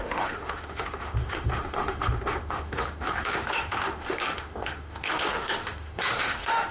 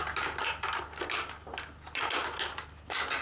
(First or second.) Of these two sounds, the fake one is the first